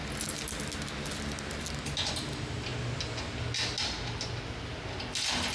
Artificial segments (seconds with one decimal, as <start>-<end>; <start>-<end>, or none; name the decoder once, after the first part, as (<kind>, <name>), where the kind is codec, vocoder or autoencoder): none